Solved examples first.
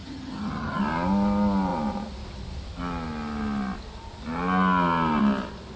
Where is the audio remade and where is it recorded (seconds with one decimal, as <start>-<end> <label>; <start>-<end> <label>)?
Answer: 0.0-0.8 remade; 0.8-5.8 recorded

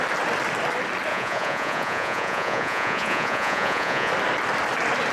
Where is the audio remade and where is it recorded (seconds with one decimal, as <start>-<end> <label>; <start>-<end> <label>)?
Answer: 0.0-1.1 recorded; 1.1-4.1 remade; 4.1-5.1 recorded

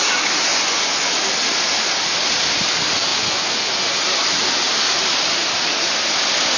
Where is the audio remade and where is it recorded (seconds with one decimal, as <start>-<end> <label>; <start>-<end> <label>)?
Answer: 0.0-0.5 recorded; 0.5-1.1 remade; 1.1-3.1 recorded; 3.1-4.0 remade; 4.0-6.6 recorded